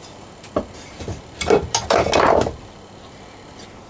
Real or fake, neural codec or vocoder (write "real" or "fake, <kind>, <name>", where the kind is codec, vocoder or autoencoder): real